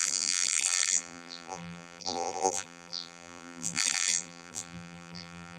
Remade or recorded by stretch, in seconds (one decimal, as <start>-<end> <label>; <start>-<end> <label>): 0.0-5.6 remade